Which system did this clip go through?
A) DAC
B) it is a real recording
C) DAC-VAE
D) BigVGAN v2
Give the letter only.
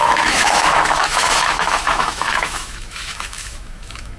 C